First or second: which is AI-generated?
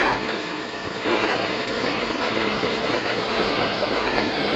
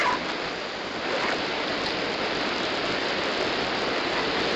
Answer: first